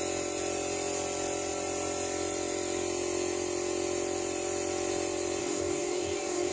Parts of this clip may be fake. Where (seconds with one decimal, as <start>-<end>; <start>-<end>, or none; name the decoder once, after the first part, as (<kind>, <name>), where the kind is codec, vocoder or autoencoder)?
5.4-6.5 (codec, DAC)